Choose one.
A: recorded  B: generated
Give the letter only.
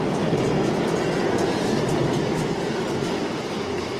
A